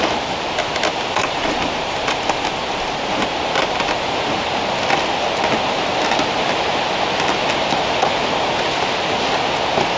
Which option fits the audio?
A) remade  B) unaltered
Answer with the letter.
B